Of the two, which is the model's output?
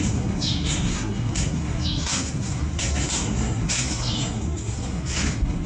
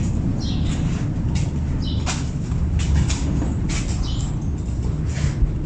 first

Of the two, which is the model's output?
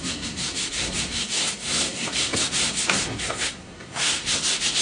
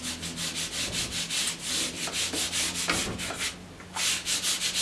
first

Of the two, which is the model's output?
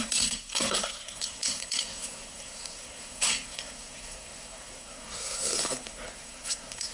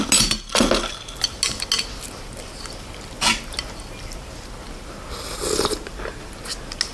first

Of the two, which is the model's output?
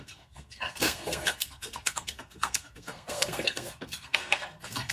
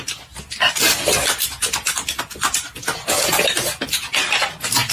first